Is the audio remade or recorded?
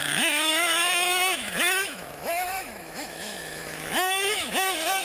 remade